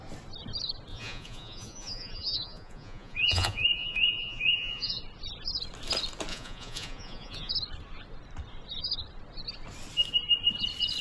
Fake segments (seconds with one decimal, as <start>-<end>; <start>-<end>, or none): 0.9-5.0; 6.3-7.5